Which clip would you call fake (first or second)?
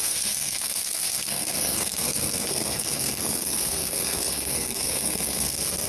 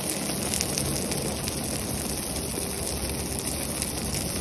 first